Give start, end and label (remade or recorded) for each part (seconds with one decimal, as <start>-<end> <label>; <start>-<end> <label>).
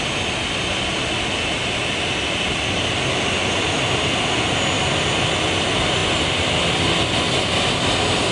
0.0-8.3 recorded